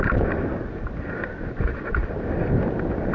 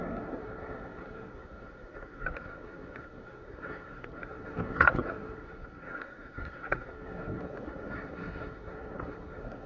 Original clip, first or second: first